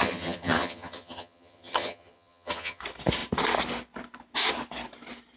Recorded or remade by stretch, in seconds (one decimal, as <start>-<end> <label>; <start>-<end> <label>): 0.0-2.8 remade; 2.8-5.4 recorded